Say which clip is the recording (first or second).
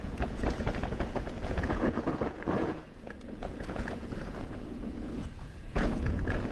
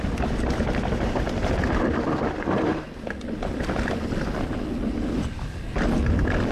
second